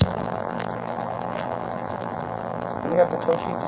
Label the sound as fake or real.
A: fake